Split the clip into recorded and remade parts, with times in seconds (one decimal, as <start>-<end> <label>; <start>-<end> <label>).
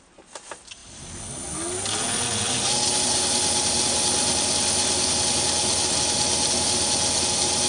0.0-7.7 recorded